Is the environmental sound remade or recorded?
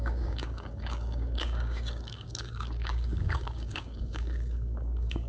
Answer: remade